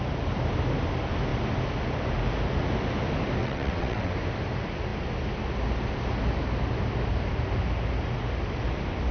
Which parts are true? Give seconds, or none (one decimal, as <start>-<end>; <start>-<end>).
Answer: 0.0-3.4; 4.1-9.1